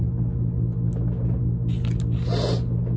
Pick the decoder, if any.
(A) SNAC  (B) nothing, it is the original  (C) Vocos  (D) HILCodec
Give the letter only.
B